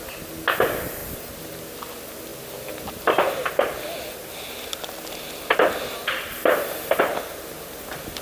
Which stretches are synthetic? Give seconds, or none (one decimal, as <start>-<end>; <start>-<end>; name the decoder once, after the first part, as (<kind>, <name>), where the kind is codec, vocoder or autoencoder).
none